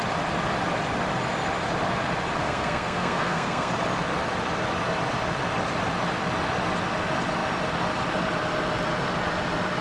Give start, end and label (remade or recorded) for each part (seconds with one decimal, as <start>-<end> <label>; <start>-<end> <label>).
0.0-2.4 recorded; 2.4-3.7 remade; 3.7-9.8 recorded